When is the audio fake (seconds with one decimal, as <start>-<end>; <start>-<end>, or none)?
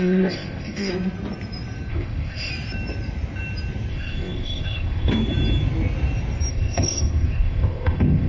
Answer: 0.0-0.9; 1.9-2.5; 3.9-5.1; 6.5-8.3